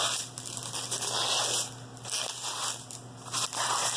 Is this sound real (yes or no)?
yes